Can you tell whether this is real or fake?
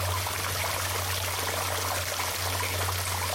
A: real